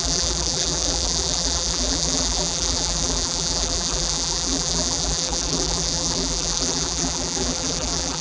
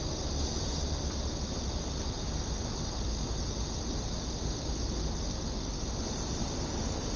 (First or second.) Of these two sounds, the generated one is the first